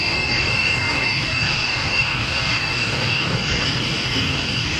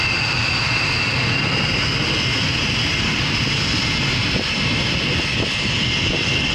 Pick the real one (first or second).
second